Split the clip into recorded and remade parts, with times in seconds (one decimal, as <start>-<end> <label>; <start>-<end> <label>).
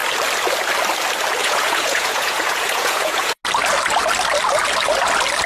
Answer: 0.0-1.4 recorded; 1.4-3.4 remade; 3.4-5.5 recorded